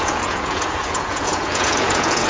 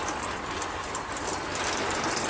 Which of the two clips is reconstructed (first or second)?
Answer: first